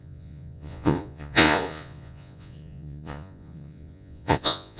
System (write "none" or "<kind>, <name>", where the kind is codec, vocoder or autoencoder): vocoder, Vocos